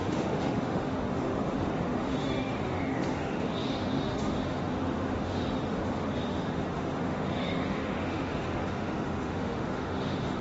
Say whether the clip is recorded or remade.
remade